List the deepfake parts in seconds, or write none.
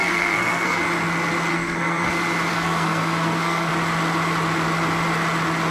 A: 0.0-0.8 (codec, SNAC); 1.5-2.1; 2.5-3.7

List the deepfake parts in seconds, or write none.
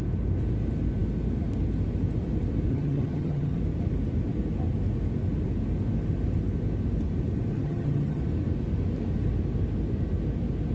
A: 2.7-3.6 (vocoder, HiFi-GAN); 7.5-8.2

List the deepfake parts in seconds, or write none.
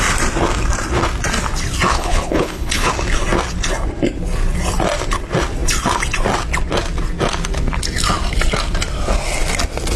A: 1.9-2.9 (codec, HILCodec)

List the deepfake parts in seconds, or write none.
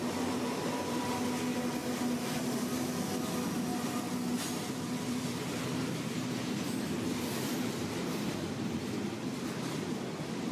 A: none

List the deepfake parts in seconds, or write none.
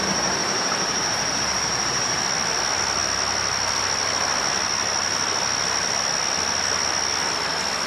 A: 0.0-2.2 (vocoder, BigVGAN v2)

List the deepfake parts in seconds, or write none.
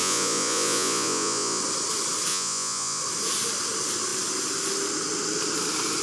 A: 0.0-1.6 (vocoder, Vocos); 2.3-3.0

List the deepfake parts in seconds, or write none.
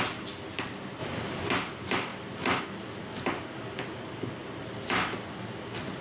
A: 1.0-1.5 (vocoder, BigVGAN v2); 2.1-2.6